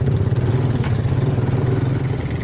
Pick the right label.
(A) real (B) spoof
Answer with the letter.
A